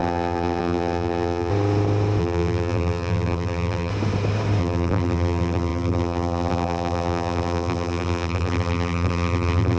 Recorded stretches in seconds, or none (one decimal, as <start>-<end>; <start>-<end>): 1.5-2.2; 3.9-4.6